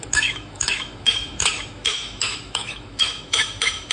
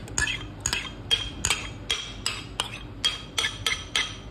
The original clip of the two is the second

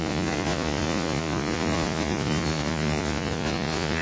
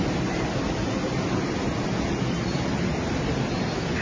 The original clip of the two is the second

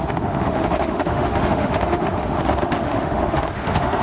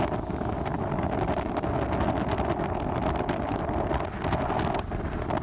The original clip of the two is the second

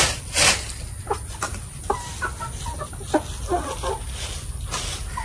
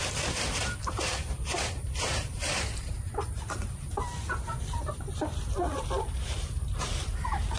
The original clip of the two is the first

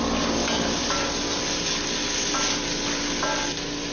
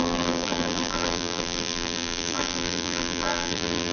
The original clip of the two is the first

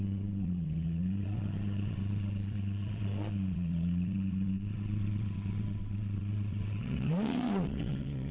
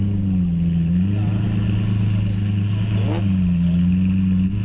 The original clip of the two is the second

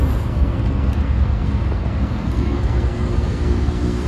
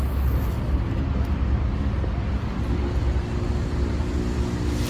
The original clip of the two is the second